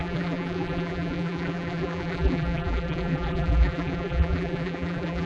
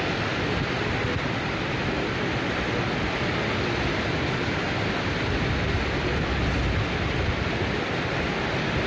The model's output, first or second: first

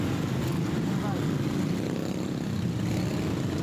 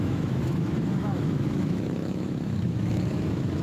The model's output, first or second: second